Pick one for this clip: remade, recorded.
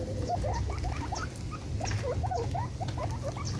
recorded